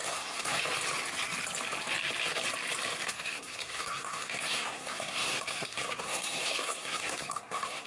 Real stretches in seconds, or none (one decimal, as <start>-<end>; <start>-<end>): 0.6-3.0